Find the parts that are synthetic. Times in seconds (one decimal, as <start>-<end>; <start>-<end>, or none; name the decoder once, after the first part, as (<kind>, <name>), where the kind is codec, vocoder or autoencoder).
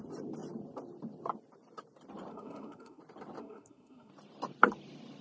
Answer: 2.3-3.0 (codec, SNAC); 3.4-4.1